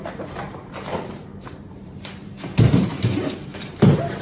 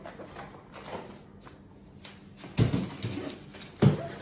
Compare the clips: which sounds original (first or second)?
second